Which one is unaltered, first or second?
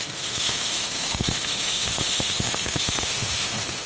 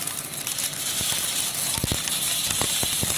second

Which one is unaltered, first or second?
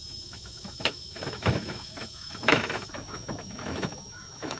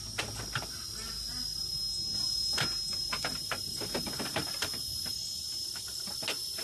second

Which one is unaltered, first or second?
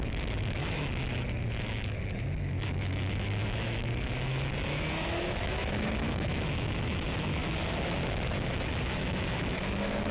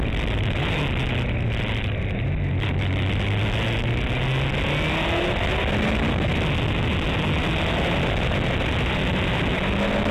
second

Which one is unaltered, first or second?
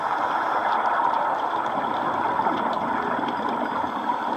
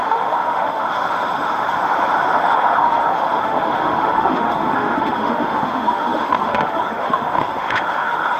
first